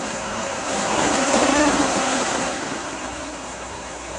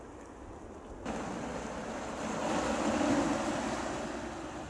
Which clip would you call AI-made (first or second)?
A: first